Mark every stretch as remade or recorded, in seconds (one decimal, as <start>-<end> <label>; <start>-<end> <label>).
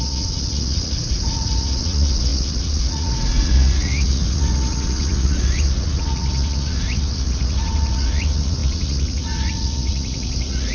0.0-10.7 remade